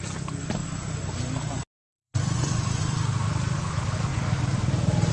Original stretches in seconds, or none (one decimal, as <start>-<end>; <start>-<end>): 0.0-1.9; 2.8-5.1